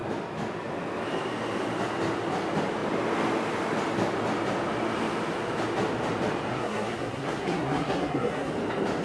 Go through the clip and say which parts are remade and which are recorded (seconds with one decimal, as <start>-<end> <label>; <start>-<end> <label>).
0.0-6.5 recorded; 6.5-8.5 remade; 8.5-9.0 recorded